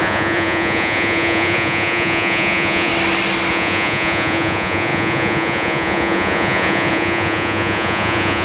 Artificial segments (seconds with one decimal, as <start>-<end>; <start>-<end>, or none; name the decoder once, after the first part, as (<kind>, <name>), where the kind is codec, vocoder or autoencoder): 0.0-2.9 (vocoder, Vocos); 3.5-8.4